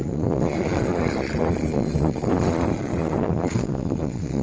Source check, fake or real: fake